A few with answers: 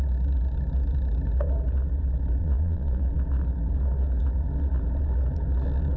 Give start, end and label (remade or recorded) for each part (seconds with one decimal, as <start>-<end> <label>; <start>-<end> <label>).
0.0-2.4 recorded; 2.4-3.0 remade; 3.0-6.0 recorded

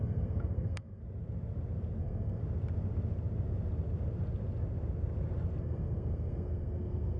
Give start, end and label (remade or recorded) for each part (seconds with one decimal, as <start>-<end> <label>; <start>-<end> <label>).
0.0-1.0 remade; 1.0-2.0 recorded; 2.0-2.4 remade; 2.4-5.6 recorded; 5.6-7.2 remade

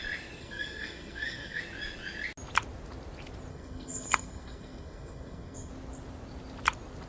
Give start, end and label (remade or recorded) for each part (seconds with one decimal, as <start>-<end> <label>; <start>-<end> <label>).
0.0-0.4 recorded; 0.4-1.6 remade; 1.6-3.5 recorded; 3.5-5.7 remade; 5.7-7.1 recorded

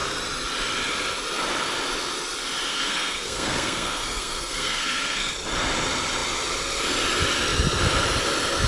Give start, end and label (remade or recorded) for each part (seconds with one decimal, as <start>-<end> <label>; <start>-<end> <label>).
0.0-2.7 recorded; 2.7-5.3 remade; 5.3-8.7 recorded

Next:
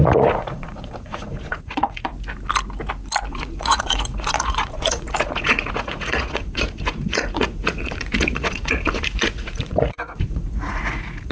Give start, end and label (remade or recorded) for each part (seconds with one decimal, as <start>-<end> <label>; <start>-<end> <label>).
0.0-2.1 remade; 2.1-3.3 recorded; 3.3-11.3 remade

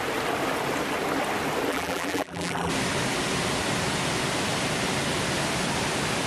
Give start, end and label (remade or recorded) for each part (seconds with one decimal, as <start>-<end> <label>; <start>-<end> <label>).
0.0-1.7 recorded; 1.7-2.7 remade; 2.7-6.3 recorded

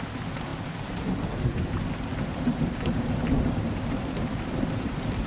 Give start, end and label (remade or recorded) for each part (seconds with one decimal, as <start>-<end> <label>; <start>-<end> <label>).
0.0-0.5 recorded; 0.5-1.2 remade; 1.2-2.1 recorded; 2.1-5.3 remade

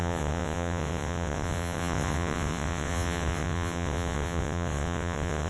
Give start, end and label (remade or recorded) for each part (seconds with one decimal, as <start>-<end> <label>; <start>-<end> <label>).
0.0-5.5 remade